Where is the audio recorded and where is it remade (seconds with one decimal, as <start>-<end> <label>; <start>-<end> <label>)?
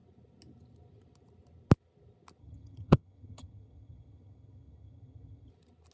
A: 0.0-2.4 recorded; 2.4-5.5 remade; 5.5-5.9 recorded